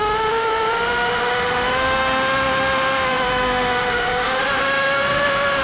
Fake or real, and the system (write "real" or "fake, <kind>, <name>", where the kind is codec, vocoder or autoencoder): fake, autoencoder, DAC-VAE